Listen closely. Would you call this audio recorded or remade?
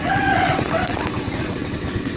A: remade